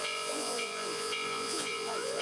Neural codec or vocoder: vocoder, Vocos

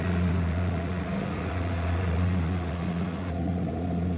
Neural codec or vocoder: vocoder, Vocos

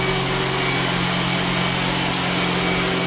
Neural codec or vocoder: none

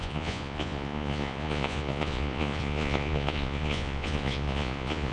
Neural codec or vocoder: vocoder, Vocos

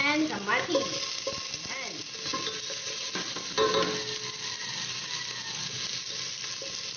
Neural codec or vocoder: none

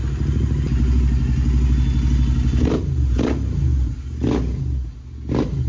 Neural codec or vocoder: none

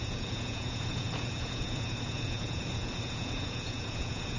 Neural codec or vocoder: vocoder, Vocos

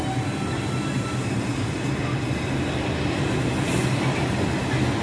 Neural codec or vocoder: none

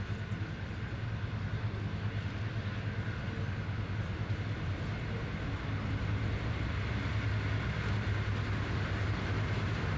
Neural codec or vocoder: none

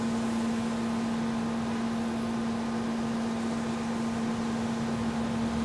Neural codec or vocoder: none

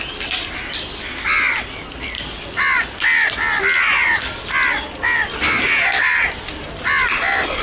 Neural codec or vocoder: none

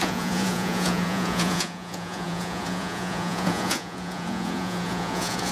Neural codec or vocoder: vocoder, Vocos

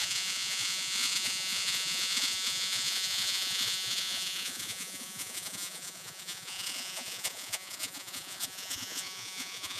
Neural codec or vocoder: vocoder, Vocos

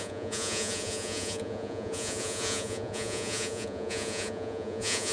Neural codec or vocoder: vocoder, Vocos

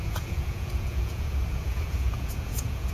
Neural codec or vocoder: vocoder, Vocos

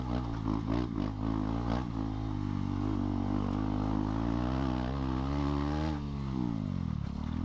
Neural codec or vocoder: none